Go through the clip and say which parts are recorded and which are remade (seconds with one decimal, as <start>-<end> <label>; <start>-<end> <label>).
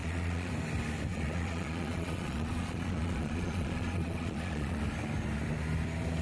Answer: 0.0-0.5 remade; 0.5-1.1 recorded; 1.1-4.8 remade; 4.8-6.2 recorded